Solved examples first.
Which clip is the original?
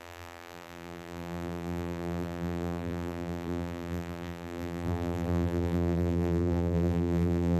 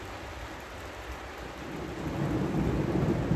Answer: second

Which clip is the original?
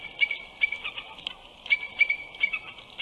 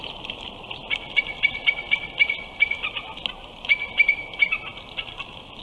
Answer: first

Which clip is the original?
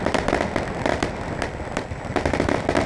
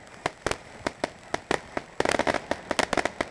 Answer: second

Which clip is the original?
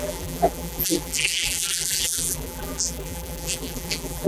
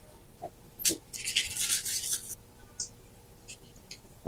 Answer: second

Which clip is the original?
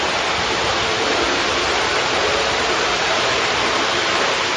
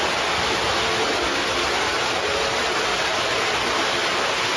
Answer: second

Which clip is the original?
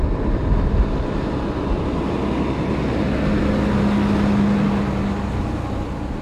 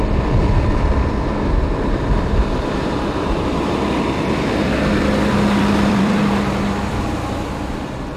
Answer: first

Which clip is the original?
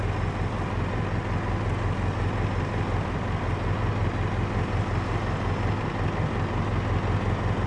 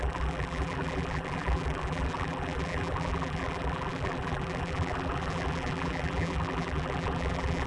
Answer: first